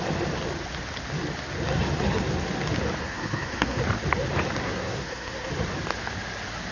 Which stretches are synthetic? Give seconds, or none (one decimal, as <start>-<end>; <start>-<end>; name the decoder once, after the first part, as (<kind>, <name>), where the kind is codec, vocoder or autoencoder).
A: 3.0-3.8 (codec, SNAC); 4.6-5.5